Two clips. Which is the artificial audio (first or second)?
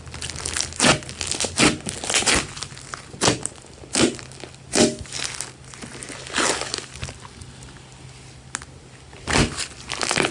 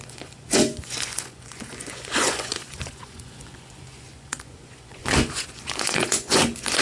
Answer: second